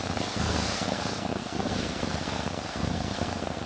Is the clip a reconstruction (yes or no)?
yes